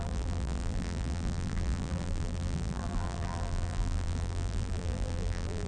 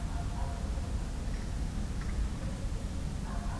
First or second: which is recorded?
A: second